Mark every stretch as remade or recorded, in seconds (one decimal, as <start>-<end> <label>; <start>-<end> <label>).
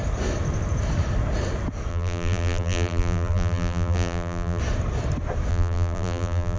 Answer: 0.0-1.9 recorded; 1.9-4.6 remade; 4.6-5.5 recorded; 5.5-6.6 remade